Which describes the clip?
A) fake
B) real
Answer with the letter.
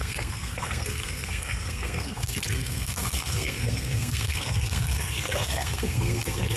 A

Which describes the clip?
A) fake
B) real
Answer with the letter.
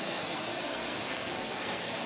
A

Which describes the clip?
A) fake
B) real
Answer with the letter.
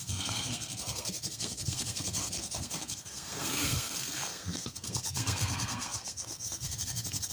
A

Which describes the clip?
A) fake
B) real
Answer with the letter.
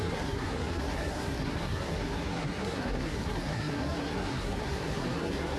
A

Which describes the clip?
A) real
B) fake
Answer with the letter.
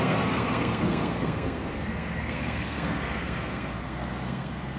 B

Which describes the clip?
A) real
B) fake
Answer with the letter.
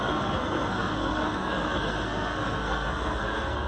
B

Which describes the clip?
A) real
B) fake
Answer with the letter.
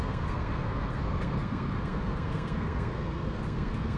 B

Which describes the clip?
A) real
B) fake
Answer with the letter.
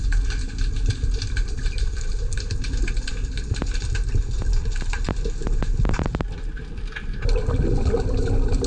A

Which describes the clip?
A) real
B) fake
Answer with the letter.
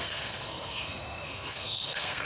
B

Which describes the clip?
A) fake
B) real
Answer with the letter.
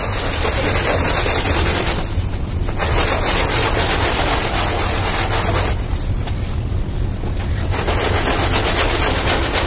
B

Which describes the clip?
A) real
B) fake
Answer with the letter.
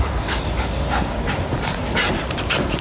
A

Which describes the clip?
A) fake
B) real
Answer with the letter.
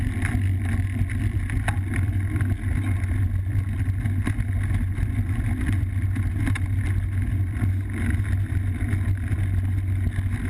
B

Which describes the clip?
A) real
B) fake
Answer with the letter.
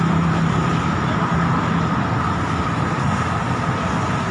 A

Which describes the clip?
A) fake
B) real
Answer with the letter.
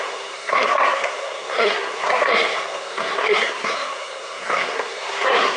A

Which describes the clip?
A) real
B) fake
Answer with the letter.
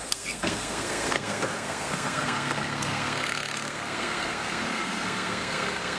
B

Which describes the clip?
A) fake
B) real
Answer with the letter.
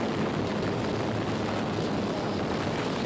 B